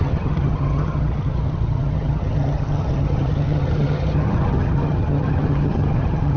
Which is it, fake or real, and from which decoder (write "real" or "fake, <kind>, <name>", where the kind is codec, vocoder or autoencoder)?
fake, vocoder, HiFi-GAN